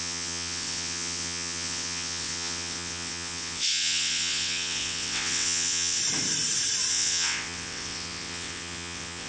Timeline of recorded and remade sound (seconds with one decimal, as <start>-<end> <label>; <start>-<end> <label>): 0.0-6.0 remade; 6.0-6.9 recorded; 6.9-9.3 remade